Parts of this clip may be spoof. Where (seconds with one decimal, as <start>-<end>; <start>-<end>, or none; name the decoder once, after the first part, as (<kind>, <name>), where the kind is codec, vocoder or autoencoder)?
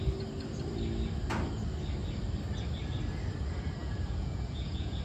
3.8-5.0 (vocoder, Vocos)